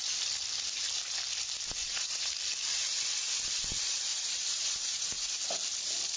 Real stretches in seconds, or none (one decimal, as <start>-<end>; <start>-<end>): 0.0-1.8; 2.3-4.1; 5.5-6.2